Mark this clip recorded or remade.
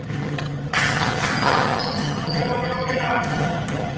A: remade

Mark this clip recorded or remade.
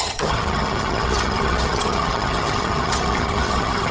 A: remade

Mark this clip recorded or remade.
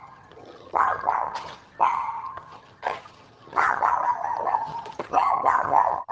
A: remade